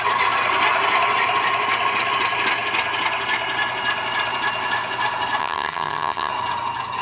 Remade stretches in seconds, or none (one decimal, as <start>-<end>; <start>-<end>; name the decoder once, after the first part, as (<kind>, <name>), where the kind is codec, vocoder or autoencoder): 5.4-6.3 (vocoder, HiFi-GAN)